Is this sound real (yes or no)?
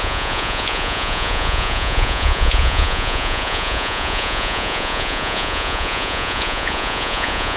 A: no